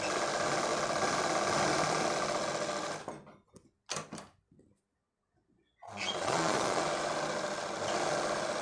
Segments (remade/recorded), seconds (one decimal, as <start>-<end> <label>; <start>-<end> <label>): 0.0-5.0 recorded; 5.0-6.8 remade; 6.8-8.6 recorded